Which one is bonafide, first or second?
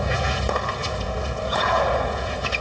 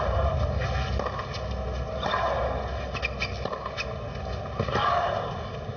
second